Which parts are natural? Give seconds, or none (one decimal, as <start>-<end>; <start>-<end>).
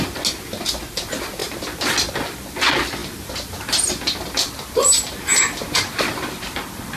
0.0-7.0